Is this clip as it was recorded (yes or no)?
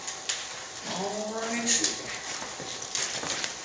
yes